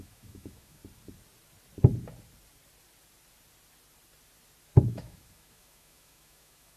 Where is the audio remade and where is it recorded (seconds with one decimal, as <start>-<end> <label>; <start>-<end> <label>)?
0.0-0.8 remade; 0.8-4.9 recorded; 4.9-6.8 remade